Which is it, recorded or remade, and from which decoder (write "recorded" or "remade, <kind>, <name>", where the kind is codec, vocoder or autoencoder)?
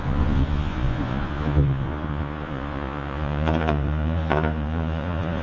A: remade, vocoder, Vocos